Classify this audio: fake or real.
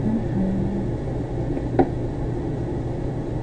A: real